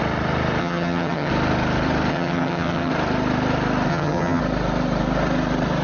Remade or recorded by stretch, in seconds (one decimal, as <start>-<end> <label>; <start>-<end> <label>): 0.0-0.6 recorded; 0.6-1.3 remade; 1.3-2.1 recorded; 2.1-2.9 remade; 2.9-3.9 recorded; 3.9-4.4 remade; 4.4-5.8 recorded